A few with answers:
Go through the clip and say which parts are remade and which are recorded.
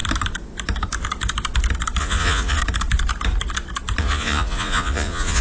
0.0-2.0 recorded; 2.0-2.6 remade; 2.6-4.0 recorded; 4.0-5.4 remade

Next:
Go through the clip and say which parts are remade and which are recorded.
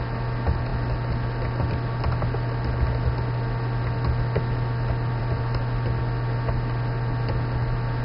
0.0-8.0 recorded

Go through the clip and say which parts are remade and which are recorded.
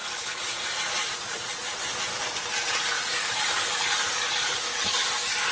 0.0-1.5 remade; 1.5-5.5 recorded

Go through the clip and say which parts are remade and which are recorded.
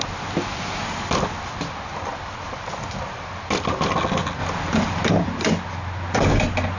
0.0-6.8 recorded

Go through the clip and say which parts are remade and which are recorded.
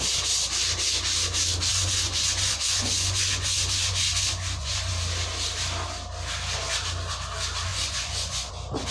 0.0-1.7 recorded; 1.7-4.9 remade; 4.9-7.7 recorded; 7.7-8.5 remade; 8.5-8.9 recorded